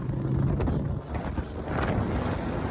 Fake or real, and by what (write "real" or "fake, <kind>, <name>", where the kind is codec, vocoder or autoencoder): real